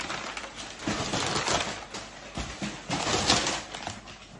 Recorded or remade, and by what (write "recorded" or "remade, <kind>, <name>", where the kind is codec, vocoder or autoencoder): recorded